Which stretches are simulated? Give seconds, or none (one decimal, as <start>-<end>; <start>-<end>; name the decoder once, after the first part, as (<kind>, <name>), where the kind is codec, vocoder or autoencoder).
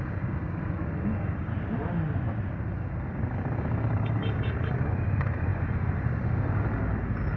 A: 0.0-1.5 (codec, DAC); 2.5-7.4